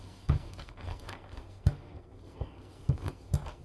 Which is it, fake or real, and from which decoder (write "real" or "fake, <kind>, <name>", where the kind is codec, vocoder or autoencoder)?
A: fake, codec, SNAC